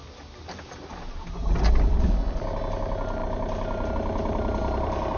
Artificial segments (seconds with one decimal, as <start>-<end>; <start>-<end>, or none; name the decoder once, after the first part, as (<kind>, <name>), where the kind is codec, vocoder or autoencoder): 4.6-5.2 (vocoder, BigVGAN v2)